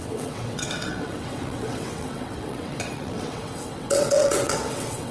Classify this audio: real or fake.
fake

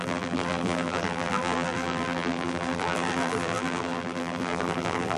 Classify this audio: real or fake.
fake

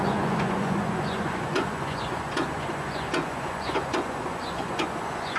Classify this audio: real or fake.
fake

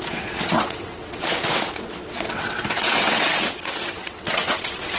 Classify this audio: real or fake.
fake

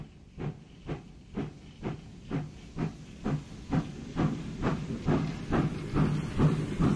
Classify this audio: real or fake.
real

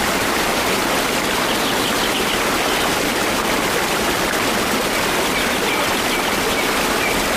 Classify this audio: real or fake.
real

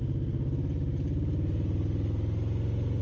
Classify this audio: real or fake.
real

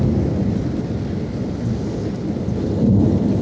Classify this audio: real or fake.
real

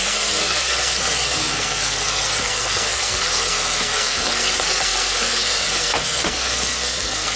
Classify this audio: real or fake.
fake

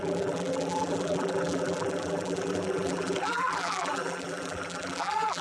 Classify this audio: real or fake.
fake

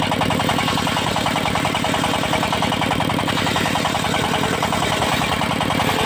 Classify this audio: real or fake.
real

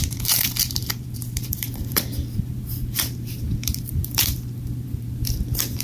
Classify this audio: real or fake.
fake